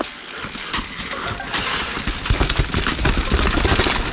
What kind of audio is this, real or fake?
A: real